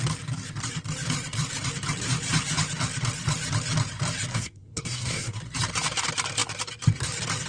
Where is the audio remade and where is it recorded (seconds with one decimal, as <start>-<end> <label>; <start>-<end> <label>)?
0.0-4.3 recorded; 4.3-5.4 remade; 5.4-7.5 recorded